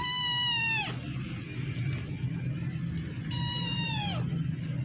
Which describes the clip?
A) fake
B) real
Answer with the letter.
B